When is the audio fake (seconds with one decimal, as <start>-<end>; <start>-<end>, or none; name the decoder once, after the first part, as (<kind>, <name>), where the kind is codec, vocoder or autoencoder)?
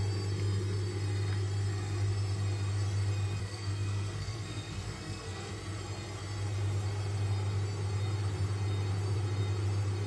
3.4-5.5 (codec, SNAC)